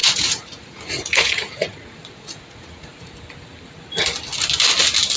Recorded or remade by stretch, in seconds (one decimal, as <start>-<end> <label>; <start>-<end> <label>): 0.0-3.1 remade; 3.1-5.2 recorded